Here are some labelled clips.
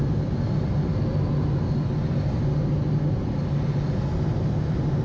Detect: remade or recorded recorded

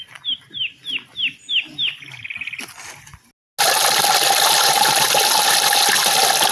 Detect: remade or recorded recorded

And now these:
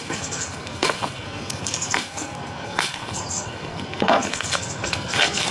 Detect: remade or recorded remade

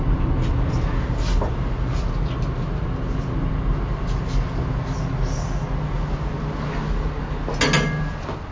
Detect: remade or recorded recorded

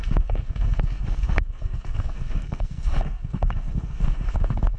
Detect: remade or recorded remade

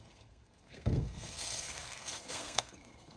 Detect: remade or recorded remade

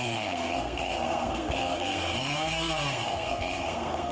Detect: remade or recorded remade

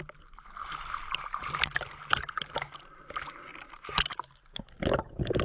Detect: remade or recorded recorded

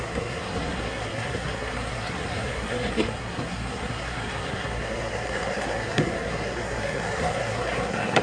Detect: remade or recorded remade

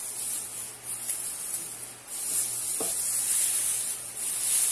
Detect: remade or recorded recorded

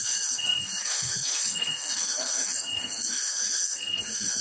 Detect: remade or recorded remade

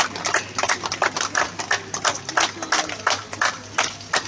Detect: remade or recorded recorded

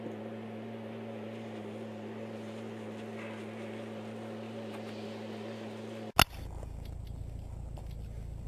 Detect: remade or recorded recorded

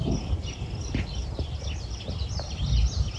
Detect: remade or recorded recorded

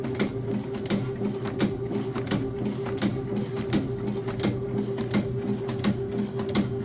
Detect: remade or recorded recorded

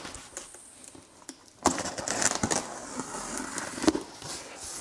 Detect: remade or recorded recorded